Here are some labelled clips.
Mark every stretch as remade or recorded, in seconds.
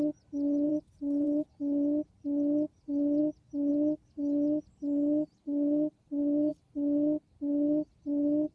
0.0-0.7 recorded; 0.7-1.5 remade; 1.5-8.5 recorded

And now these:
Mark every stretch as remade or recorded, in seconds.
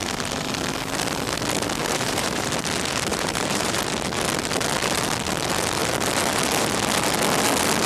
0.0-1.8 recorded; 1.8-2.5 remade; 2.5-3.1 recorded; 3.1-3.8 remade; 3.8-7.9 recorded